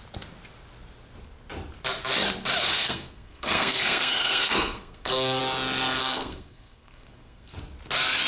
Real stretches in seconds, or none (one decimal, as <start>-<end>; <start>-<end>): 0.0-2.6; 5.4-6.0; 7.6-8.3